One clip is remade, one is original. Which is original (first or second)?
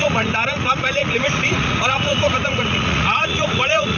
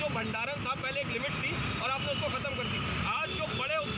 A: second